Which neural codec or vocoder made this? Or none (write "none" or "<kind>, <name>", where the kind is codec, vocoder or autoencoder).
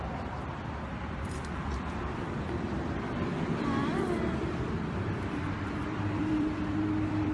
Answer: vocoder, BigVGAN v2